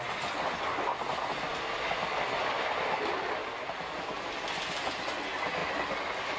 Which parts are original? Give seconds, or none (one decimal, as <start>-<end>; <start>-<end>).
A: 0.0-6.4